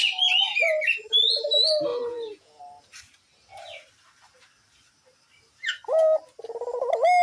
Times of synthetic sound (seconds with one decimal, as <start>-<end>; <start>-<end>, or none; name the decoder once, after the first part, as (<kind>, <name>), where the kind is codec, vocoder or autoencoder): 1.9-2.6 (vocoder, Vocos)